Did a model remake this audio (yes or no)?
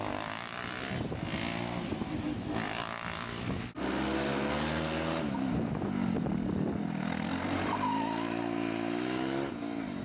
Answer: no